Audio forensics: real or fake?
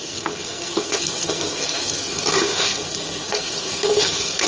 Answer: fake